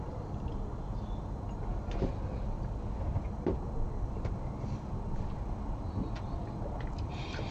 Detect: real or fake real